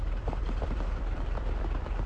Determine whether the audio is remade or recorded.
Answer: remade